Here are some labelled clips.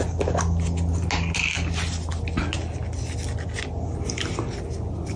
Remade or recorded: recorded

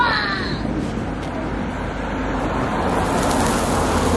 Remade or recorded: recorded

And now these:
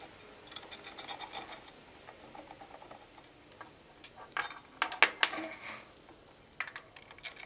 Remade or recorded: recorded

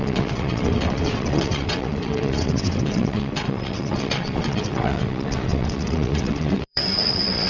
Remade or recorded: remade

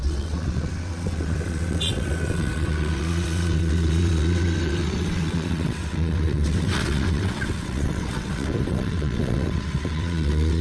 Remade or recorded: remade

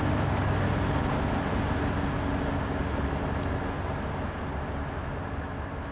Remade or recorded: recorded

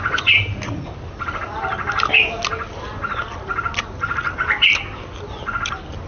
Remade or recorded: recorded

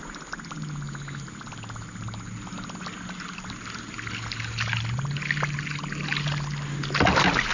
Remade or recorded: recorded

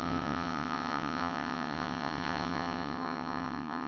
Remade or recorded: remade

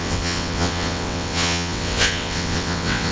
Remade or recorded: remade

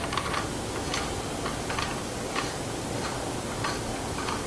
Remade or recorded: recorded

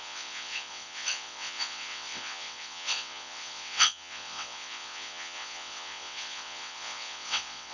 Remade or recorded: remade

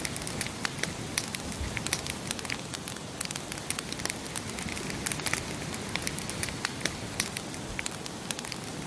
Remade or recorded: recorded